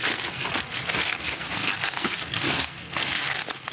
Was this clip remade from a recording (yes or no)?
yes